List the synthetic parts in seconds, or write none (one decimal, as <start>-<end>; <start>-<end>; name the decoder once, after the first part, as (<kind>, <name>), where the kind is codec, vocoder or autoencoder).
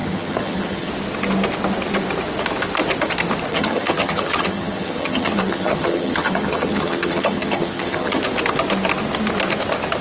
0.0-0.9 (vocoder, HiFi-GAN); 3.5-8.2